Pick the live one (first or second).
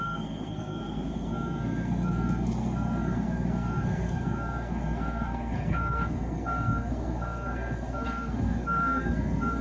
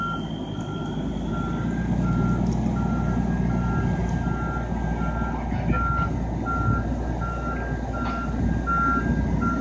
second